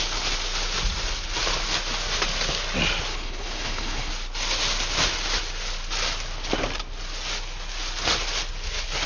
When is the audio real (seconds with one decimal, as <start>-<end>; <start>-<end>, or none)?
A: 0.0-3.1; 4.1-9.1